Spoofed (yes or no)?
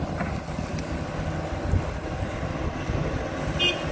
no